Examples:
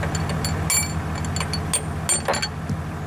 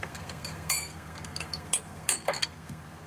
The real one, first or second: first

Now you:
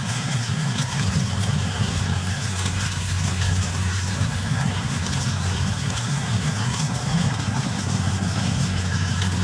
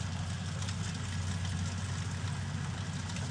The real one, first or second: second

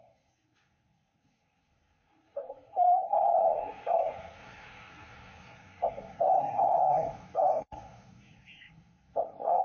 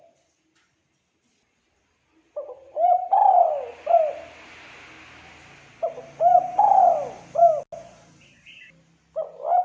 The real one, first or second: second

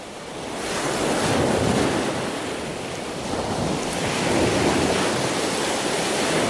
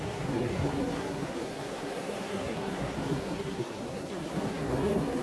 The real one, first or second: first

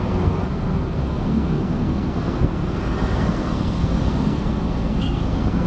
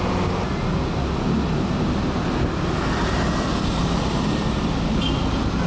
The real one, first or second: second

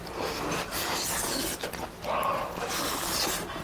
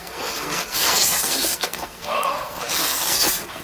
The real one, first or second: first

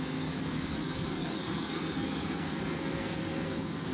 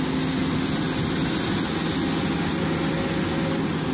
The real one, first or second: second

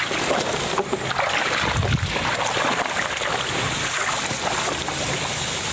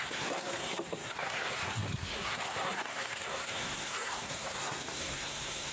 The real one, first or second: first